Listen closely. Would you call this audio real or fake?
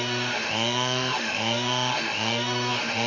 fake